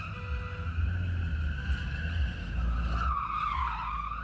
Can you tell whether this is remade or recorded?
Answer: recorded